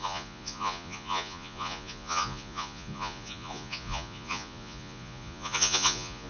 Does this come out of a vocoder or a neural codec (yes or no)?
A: yes